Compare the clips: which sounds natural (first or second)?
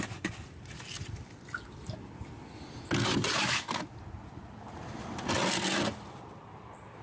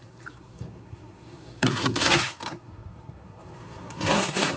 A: first